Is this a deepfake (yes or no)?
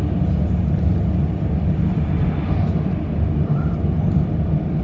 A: no